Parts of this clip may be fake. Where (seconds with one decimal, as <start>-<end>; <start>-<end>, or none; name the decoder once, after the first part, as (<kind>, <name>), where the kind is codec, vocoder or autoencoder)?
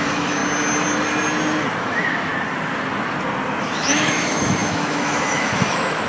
0.0-0.4 (autoencoder, DAC-VAE); 1.8-2.3; 3.6-6.1